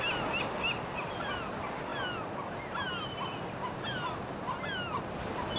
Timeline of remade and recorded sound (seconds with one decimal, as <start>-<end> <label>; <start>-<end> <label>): 0.0-5.6 recorded